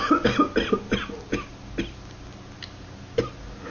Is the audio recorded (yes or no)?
yes